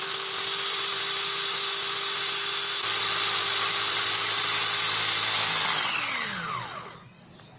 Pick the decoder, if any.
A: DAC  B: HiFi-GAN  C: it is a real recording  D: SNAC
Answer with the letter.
C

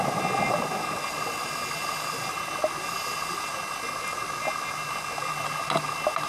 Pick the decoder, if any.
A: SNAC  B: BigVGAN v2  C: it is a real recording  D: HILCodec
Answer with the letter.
C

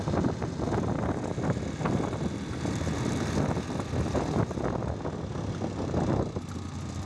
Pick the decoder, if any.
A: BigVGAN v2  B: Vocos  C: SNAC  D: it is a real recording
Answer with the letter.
D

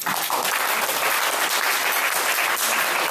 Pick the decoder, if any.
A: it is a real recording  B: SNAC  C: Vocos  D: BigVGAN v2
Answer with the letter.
A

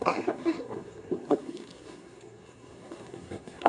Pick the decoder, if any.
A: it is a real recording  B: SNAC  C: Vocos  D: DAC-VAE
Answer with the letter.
B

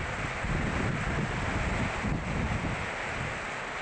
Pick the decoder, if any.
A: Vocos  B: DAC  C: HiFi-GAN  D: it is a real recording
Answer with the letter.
D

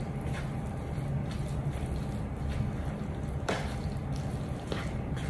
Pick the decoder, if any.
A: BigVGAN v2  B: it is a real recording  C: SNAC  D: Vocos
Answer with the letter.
A